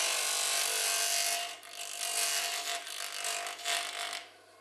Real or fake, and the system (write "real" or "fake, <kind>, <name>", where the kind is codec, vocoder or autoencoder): real